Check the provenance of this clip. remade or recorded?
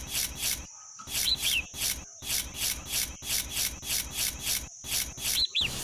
recorded